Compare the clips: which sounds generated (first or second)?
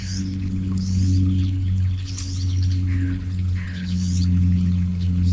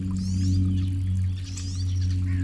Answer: first